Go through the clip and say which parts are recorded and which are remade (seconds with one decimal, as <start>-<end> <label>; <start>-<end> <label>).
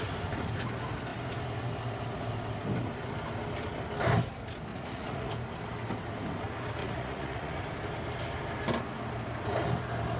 0.0-4.7 recorded; 4.7-5.3 remade; 5.3-6.8 recorded; 6.8-7.6 remade; 7.6-10.2 recorded